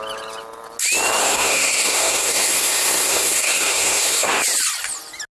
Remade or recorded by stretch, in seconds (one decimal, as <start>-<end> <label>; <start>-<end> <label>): 0.0-1.2 recorded; 1.2-4.4 remade; 4.4-5.4 recorded